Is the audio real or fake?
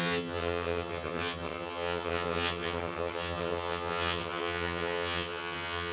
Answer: fake